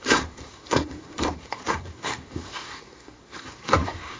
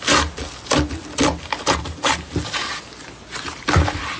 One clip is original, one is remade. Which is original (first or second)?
second